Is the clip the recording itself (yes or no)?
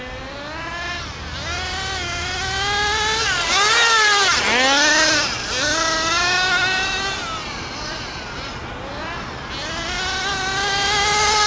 yes